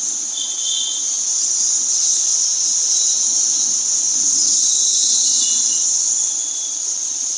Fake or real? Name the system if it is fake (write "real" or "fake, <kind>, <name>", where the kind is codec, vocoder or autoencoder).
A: fake, vocoder, WaveNeXt